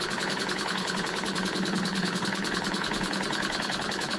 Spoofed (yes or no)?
yes